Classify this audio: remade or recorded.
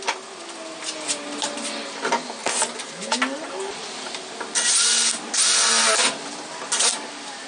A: recorded